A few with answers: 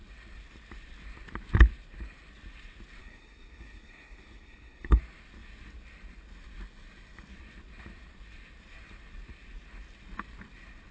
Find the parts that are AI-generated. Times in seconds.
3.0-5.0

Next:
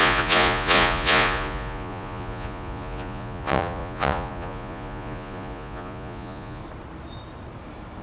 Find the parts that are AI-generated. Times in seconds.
0.0-6.6

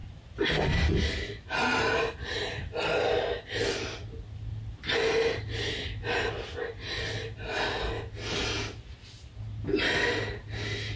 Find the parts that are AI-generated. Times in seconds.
none